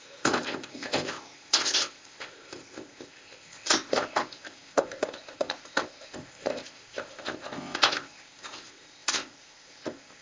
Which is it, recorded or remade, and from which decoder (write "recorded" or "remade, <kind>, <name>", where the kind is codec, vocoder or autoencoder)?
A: remade, codec, ZipCodec